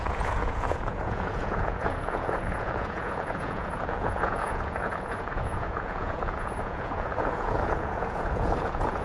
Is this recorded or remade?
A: remade